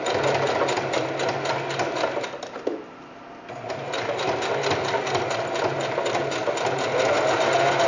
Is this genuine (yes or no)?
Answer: yes